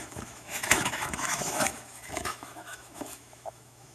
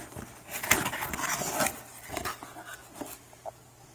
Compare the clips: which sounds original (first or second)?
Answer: second